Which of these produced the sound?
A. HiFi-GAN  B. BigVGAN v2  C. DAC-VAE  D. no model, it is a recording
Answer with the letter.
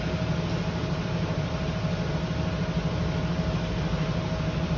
D